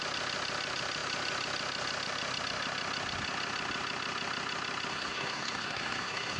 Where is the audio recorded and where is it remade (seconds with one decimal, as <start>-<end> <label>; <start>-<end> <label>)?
0.0-4.9 recorded; 4.9-6.4 remade